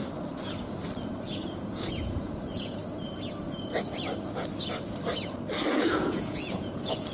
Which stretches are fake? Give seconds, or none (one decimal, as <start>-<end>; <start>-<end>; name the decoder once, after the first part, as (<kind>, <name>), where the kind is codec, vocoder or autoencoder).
1.2-2.8 (vocoder, Vocos); 5.7-7.1